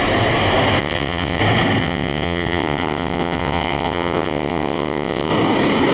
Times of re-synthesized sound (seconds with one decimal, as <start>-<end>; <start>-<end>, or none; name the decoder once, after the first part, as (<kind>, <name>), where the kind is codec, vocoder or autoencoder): 0.8-1.4 (vocoder, WaveNeXt); 1.8-5.3